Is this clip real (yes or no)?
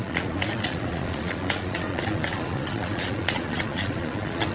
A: no